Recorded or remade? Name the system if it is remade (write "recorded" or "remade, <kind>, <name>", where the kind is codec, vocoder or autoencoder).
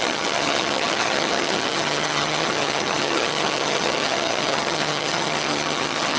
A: remade, vocoder, HiFi-GAN